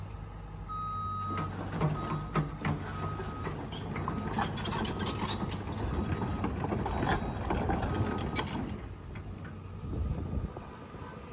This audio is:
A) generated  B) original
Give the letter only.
B